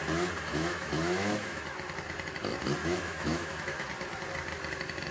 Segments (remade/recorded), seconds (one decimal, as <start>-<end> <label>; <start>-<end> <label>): 0.0-0.5 recorded; 0.5-1.6 remade; 1.6-2.8 recorded; 2.8-3.9 remade; 3.9-5.1 recorded